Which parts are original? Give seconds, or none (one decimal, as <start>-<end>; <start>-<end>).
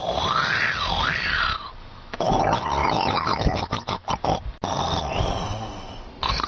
0.0-1.8; 2.4-2.8; 4.1-6.5